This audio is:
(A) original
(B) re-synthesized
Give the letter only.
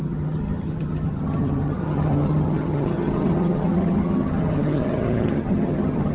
B